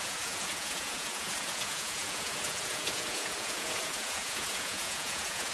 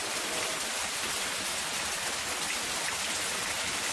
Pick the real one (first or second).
second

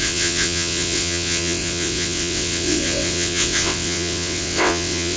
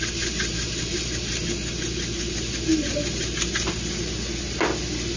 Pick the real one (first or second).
second